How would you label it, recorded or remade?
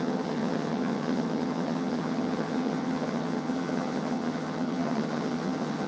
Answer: remade